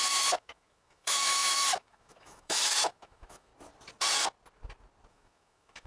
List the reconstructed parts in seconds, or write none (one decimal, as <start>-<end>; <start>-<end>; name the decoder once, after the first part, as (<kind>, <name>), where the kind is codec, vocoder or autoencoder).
0.0-3.5 (autoencoder, DAC-VAE); 5.1-5.9